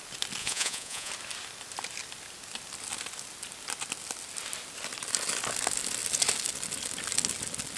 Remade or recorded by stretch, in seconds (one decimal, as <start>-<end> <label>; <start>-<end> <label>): 0.0-0.4 recorded; 0.4-1.1 remade; 1.1-7.8 recorded